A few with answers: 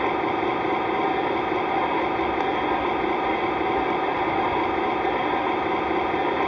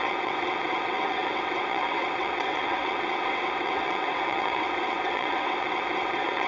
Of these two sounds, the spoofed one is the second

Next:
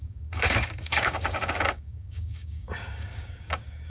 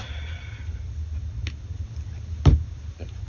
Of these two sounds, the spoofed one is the first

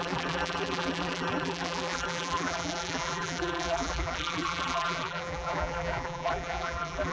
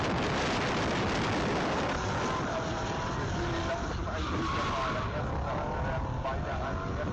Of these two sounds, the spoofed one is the first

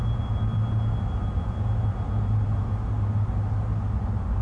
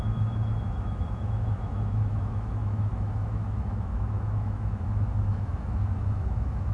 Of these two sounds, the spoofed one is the second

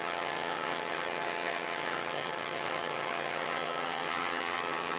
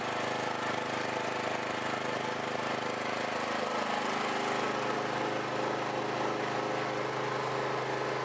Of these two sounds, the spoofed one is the first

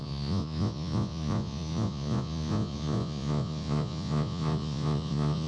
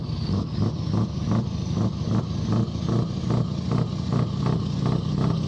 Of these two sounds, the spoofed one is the first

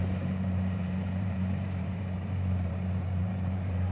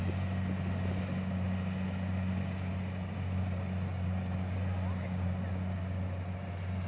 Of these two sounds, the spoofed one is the first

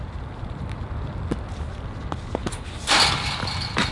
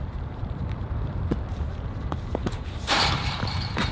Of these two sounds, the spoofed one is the second